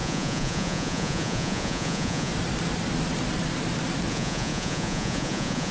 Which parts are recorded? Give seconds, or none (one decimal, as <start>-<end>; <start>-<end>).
2.3-4.1